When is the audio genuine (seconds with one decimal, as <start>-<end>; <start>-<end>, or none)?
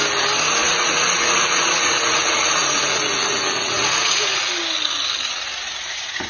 0.0-0.6; 4.4-5.5